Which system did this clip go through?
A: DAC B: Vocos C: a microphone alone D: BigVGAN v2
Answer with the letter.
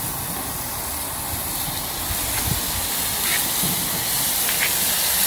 C